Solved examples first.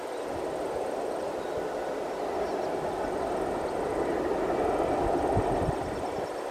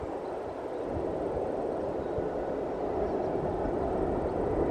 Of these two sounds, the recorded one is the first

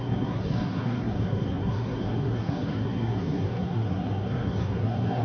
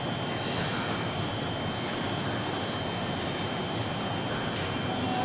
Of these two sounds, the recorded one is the second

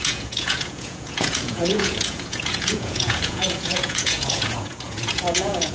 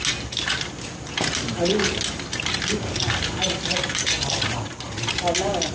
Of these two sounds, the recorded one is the second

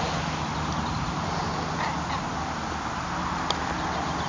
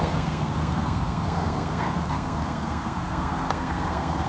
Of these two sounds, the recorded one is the first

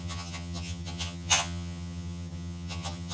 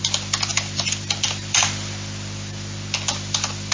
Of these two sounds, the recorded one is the second